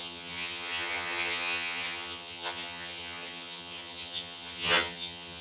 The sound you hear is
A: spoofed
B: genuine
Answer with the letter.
A